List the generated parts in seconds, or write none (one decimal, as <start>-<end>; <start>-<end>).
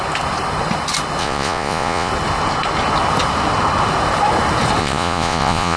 1.2-2.1; 4.8-5.8